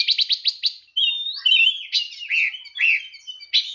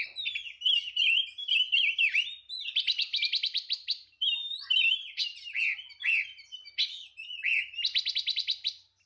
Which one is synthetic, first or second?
second